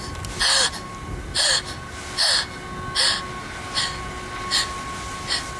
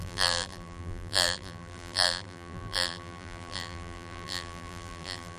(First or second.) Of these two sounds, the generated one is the second